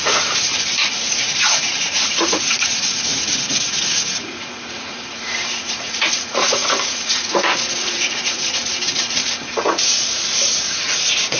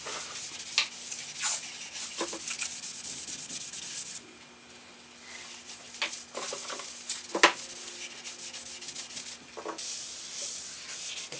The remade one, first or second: first